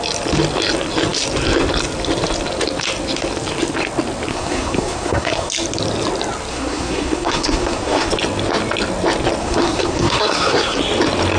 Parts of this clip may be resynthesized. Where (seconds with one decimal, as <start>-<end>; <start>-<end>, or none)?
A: 4.3-5.5; 6.5-8.1; 9.4-10.8